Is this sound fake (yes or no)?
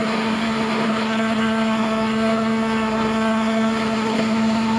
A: yes